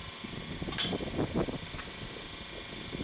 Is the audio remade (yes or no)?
no